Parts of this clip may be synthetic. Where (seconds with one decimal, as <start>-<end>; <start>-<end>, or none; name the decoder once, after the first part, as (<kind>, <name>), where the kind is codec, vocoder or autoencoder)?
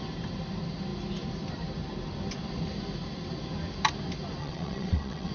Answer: 4.4-5.3 (vocoder, WaveNeXt)